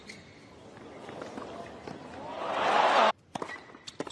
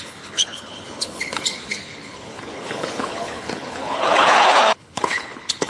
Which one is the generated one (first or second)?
second